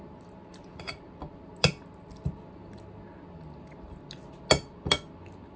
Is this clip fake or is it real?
real